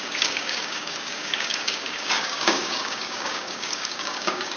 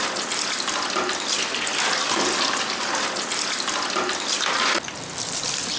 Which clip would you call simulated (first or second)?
first